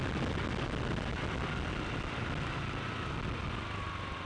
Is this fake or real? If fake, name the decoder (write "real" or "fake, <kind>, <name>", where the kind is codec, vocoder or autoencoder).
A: real